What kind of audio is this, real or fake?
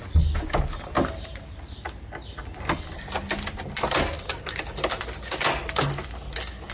real